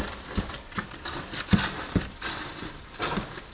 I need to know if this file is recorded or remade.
recorded